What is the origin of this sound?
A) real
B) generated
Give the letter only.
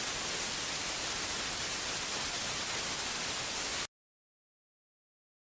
A